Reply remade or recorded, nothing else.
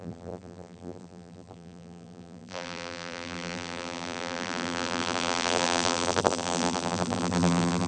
remade